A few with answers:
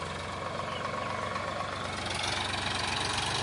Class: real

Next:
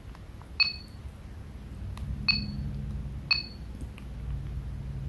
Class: real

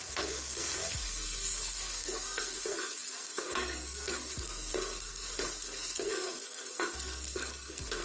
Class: fake